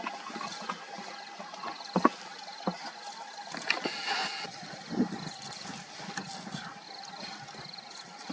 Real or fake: real